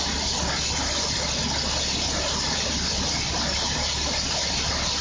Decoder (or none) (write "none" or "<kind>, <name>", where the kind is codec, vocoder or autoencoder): none